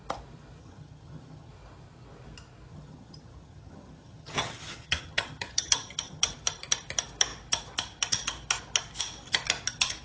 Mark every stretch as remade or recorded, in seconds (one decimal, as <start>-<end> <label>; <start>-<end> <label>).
0.0-0.6 recorded; 0.6-1.5 remade; 1.5-2.7 recorded; 2.7-6.3 remade; 6.3-10.0 recorded